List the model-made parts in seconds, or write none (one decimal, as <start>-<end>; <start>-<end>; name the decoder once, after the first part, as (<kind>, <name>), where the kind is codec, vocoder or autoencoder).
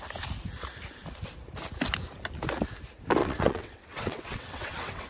3.2-5.1 (vocoder, WaveNeXt)